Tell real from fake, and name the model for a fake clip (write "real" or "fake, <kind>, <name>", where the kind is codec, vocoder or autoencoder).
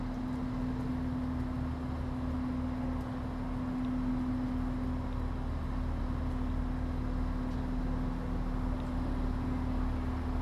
real